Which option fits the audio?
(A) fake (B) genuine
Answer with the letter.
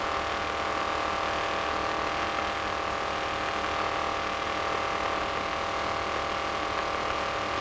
B